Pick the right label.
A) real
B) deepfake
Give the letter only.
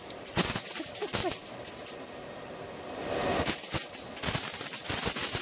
A